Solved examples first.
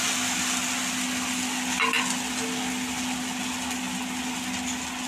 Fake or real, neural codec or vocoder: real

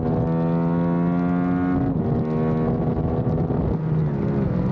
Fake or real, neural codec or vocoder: real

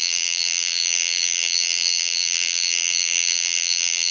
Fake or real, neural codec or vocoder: fake, vocoder, BigVGAN v2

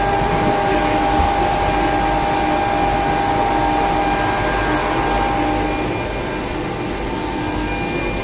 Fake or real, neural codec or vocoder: real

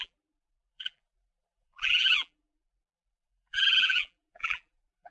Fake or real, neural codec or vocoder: fake, vocoder, BigVGAN v2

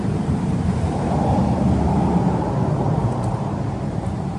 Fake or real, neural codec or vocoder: fake, vocoder, BigVGAN v2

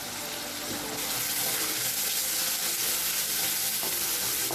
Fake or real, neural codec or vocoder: real